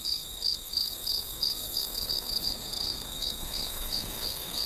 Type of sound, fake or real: fake